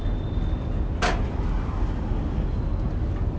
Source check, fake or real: real